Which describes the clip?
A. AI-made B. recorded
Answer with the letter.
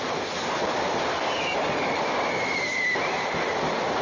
B